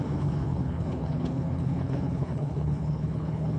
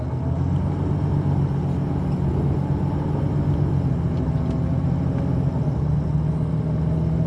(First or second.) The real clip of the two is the second